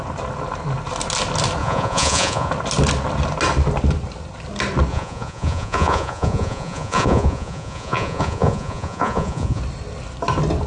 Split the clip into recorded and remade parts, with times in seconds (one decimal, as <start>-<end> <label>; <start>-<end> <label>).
0.0-1.6 recorded; 1.6-2.5 remade; 2.5-4.9 recorded; 4.9-9.6 remade; 9.6-10.7 recorded